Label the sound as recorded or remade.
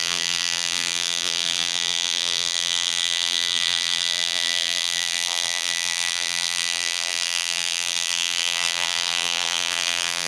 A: remade